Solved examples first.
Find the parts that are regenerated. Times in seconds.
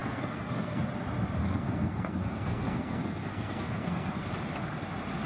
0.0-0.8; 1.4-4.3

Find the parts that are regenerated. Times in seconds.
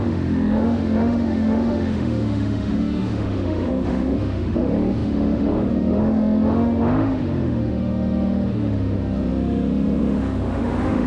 0.0-11.1